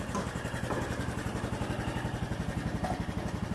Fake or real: fake